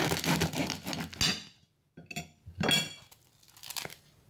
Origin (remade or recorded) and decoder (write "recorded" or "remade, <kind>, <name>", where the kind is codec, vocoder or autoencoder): recorded